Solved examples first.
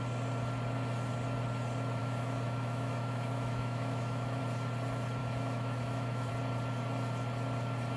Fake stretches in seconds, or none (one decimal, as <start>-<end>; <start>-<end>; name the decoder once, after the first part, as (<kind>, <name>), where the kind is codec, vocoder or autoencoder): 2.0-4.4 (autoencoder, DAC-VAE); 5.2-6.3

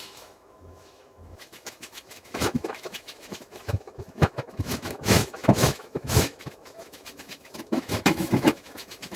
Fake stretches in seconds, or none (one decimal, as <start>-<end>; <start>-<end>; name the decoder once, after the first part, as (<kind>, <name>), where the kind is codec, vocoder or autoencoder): 0.0-9.2 (autoencoder, DAC-VAE)

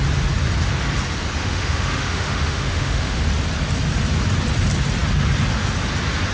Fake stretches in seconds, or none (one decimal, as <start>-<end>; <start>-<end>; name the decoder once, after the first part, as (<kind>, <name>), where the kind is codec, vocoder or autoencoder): 1.4-3.2 (autoencoder, DAC-VAE)

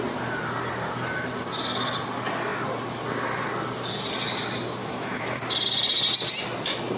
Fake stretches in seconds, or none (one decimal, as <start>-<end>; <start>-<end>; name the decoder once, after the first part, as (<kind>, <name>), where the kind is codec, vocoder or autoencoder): 4.8-5.4 (autoencoder, DAC-VAE)

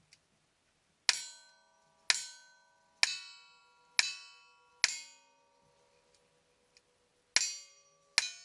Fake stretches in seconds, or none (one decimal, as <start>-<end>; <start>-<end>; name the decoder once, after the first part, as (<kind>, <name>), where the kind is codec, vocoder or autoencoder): none

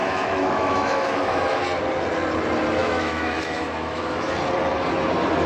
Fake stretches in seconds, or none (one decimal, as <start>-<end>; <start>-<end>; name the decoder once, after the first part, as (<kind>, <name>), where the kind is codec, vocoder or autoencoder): 0.0-1.6 (autoencoder, DAC-VAE); 2.8-4.3